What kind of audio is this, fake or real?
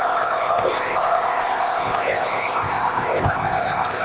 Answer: fake